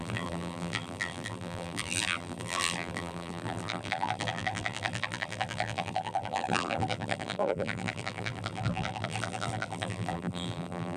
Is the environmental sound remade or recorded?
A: remade